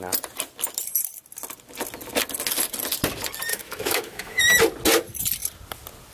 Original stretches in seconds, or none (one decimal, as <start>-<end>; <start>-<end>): 0.0-3.5; 4.4-6.1